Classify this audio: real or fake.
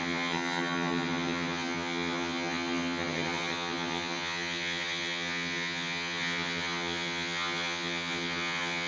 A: fake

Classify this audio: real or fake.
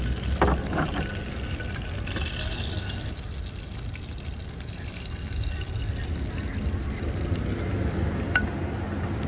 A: real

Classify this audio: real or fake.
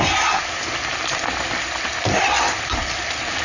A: real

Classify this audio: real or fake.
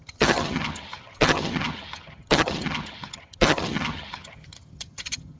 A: fake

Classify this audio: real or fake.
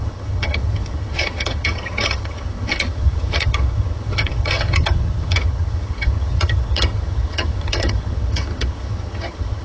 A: fake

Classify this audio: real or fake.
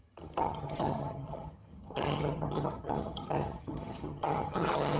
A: fake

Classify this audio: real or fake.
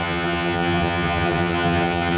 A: fake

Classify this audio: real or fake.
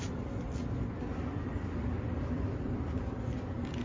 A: real